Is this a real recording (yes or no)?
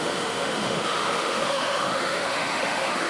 no